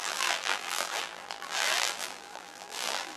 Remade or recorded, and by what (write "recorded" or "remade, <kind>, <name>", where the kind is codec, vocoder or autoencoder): remade, vocoder, BigVGAN v2